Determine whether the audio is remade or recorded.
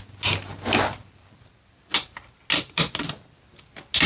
recorded